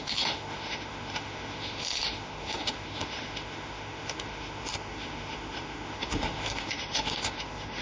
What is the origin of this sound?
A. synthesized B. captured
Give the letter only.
A